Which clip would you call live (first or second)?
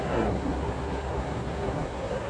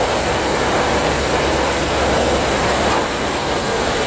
second